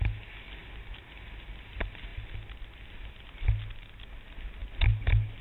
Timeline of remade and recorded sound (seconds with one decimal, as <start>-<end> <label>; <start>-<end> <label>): 0.0-5.4 recorded